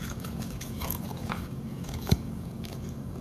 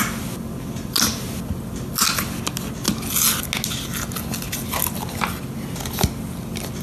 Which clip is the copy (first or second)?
first